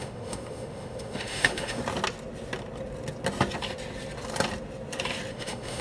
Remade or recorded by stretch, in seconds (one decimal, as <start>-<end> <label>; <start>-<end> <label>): 0.0-1.8 remade; 1.8-5.3 recorded; 5.3-5.8 remade